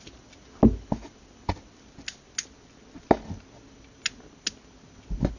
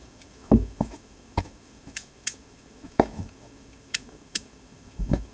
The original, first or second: first